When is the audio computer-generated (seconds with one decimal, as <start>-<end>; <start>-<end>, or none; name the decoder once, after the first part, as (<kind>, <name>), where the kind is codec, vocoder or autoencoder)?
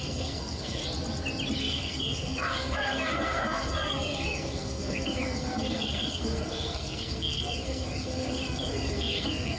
0.0-0.8 (codec, SNAC); 1.6-9.6